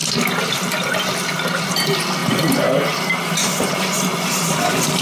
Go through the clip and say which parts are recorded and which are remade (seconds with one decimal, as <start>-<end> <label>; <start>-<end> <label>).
0.0-5.0 recorded